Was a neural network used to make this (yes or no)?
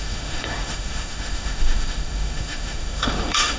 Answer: yes